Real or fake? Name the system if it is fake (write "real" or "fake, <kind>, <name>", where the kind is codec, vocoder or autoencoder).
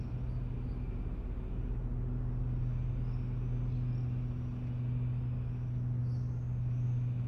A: real